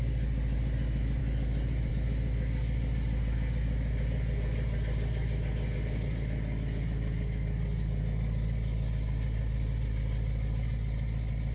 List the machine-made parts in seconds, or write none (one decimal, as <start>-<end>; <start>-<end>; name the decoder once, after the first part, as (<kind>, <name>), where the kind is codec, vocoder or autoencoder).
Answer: none